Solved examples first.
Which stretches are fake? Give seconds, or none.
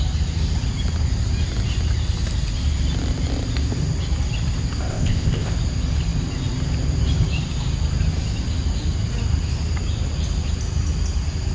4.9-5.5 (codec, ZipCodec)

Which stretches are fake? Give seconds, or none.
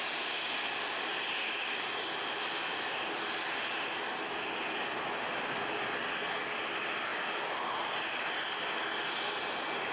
none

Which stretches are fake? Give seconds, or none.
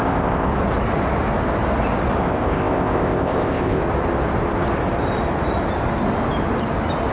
0.0-0.5 (codec, ZipCodec); 2.2-3.8